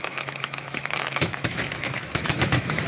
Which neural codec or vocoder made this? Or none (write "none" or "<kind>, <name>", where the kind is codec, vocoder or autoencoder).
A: autoencoder, DAC-VAE